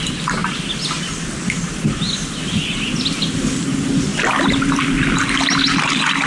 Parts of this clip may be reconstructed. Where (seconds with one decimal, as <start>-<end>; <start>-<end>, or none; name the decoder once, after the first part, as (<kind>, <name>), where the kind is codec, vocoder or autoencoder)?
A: none